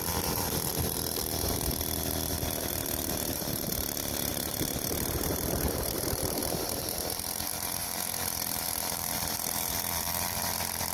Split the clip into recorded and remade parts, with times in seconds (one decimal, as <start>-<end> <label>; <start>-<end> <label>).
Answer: 0.0-10.9 remade